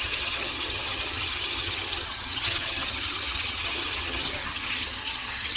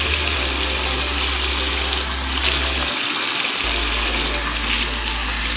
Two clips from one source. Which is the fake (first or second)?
first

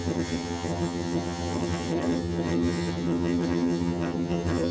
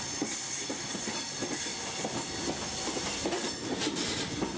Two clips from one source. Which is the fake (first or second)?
first